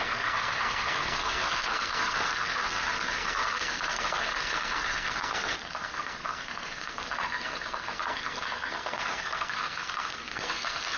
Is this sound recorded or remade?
remade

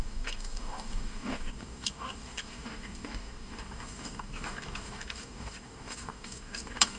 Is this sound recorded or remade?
remade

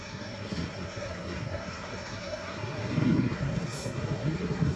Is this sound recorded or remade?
remade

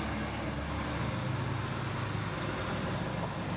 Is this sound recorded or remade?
recorded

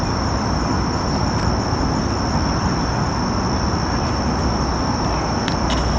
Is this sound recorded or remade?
recorded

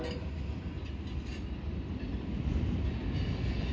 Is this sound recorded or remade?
recorded